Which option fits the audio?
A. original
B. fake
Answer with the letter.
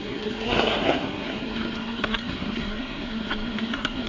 B